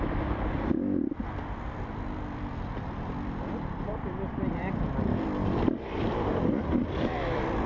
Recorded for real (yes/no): no